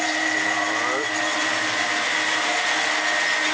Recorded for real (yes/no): yes